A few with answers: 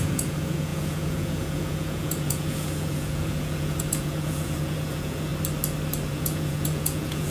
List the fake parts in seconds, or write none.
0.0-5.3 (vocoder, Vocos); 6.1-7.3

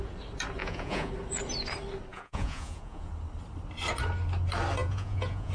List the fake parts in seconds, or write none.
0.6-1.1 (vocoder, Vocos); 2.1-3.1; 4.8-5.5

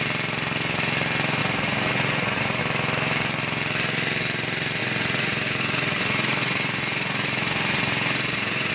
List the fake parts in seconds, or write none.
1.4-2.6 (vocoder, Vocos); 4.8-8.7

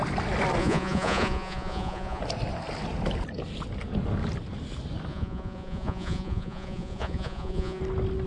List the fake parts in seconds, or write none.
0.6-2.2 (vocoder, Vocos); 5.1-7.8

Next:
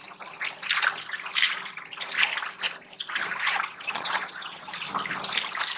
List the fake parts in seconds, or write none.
3.4-4.7 (vocoder, Vocos)

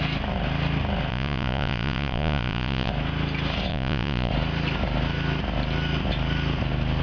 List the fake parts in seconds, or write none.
1.1-2.9 (vocoder, Vocos); 3.7-4.3

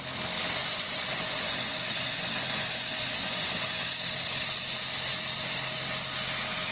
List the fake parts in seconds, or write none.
0.6-3.9 (vocoder, Vocos)

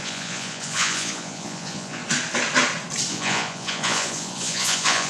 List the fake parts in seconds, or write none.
0.0-2.0 (vocoder, Vocos); 3.1-5.1